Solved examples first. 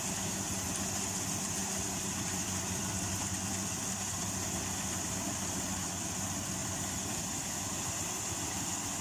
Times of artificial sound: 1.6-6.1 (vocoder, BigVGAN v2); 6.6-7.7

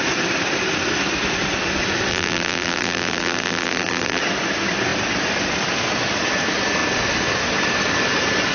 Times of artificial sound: 2.1-4.2 (vocoder, BigVGAN v2)

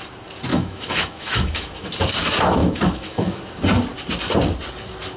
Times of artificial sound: 0.5-1.9 (autoencoder, DAC-VAE); 2.6-3.4

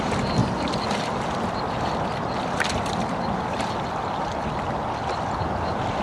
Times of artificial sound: none

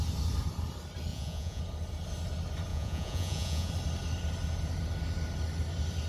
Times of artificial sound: 1.1-1.6 (vocoder, Vocos); 2.7-3.7

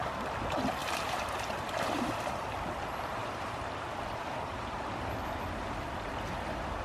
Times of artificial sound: 0.8-2.3 (vocoder, BigVGAN v2); 3.2-5.1